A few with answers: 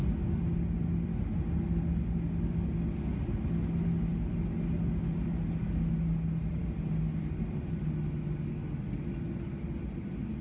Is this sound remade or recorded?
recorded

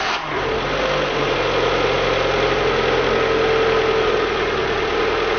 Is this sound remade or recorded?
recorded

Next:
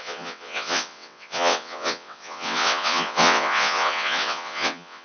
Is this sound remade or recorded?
remade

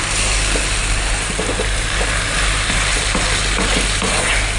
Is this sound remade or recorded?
recorded